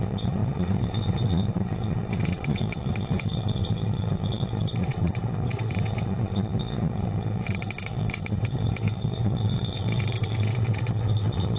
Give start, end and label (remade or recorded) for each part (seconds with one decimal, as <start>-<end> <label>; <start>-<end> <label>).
0.0-11.6 remade

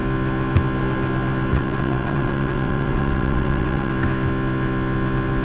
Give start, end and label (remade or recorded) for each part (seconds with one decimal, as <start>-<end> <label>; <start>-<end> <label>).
0.0-1.5 recorded; 1.5-3.9 remade; 3.9-5.4 recorded

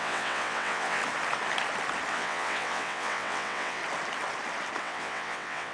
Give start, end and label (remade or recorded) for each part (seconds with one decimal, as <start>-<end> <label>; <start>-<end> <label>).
0.0-1.0 remade; 1.0-2.1 recorded; 2.1-3.8 remade; 3.8-4.8 recorded; 4.8-5.7 remade

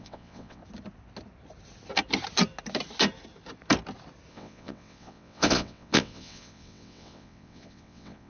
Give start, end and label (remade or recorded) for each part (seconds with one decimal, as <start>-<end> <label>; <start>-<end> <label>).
0.0-0.6 remade; 0.6-4.3 recorded; 4.3-8.3 remade

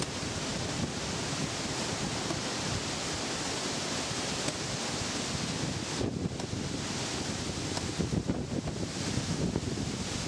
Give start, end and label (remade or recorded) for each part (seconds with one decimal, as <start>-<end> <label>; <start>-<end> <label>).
0.0-10.3 recorded

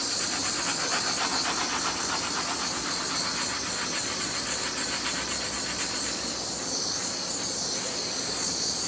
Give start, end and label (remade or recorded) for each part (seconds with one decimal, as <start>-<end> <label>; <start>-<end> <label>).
0.0-8.9 recorded

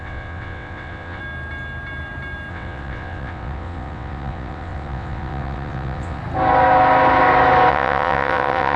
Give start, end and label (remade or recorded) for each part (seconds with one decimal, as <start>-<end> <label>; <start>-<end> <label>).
0.0-1.2 remade; 1.2-2.5 recorded; 2.5-6.2 remade; 6.2-7.7 recorded; 7.7-8.8 remade

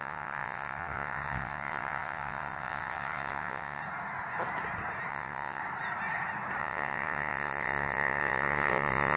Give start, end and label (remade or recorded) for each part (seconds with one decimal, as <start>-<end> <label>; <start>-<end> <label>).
0.0-3.8 remade; 3.8-5.1 recorded; 5.1-5.6 remade; 5.6-6.6 recorded; 6.6-9.2 remade